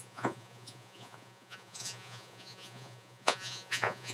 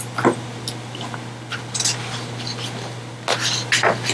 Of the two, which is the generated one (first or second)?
first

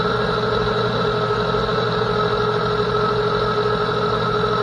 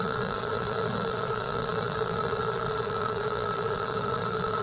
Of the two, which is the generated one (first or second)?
second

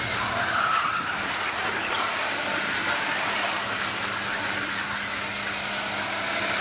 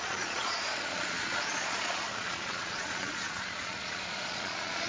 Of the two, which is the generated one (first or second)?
second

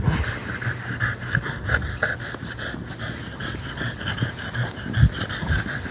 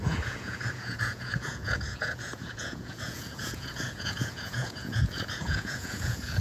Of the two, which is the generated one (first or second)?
second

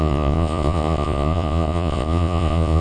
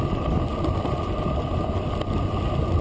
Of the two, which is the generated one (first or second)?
first